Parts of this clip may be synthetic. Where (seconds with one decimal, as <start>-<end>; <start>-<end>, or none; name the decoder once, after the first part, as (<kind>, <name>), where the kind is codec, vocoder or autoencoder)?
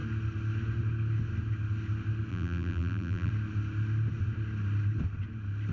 2.3-3.3 (vocoder, BigVGAN v2)